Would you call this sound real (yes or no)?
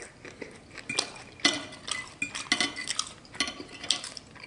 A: yes